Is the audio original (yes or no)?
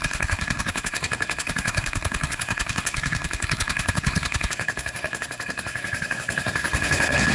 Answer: no